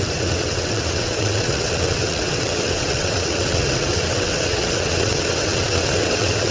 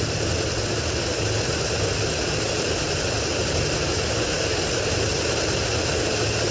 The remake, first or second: first